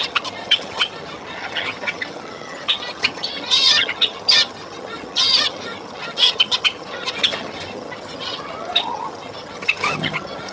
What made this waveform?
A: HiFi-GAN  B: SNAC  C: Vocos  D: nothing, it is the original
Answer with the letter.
A